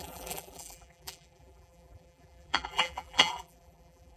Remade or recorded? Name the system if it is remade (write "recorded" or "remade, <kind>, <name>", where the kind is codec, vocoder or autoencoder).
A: remade, vocoder, BigVGAN v2